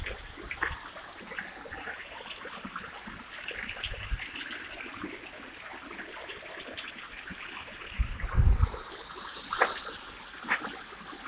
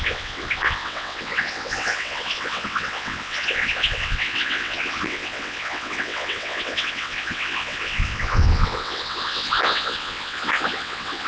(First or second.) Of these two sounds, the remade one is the second